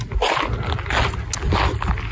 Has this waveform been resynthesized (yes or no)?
no